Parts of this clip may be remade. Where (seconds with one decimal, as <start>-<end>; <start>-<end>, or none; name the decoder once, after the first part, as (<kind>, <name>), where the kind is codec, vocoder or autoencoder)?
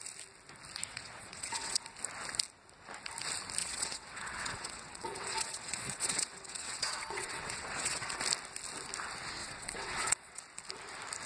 0.9-1.8 (vocoder, WaveNeXt); 3.6-8.2; 9.4-10.4